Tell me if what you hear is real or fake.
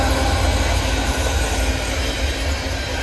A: real